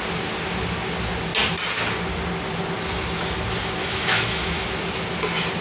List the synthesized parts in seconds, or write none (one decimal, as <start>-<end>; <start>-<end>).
3.8-4.7